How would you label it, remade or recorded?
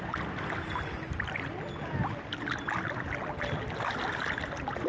recorded